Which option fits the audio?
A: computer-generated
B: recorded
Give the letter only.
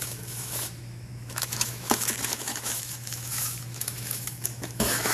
A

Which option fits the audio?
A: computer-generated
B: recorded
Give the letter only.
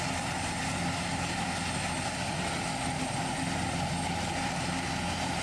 B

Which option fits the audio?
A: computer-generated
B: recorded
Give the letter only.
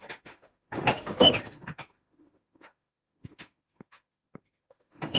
A